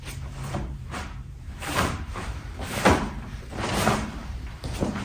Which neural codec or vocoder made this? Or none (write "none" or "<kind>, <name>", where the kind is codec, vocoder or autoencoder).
vocoder, BigVGAN v2